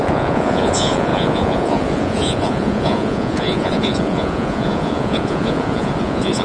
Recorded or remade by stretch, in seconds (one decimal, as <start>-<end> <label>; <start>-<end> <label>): 0.0-6.4 remade